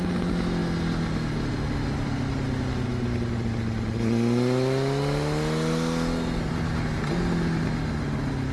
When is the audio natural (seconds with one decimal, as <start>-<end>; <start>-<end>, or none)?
0.0-8.5